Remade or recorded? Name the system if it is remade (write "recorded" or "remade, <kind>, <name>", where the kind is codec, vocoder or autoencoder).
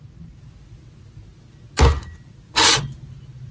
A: recorded